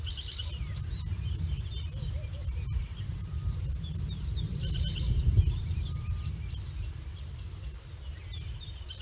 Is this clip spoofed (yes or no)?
yes